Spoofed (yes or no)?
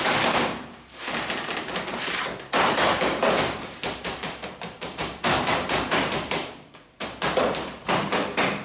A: yes